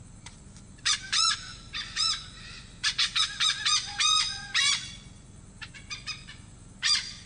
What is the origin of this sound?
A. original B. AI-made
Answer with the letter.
B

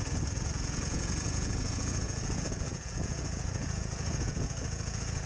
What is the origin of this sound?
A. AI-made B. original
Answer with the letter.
A